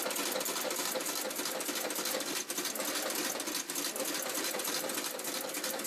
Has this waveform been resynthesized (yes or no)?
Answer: no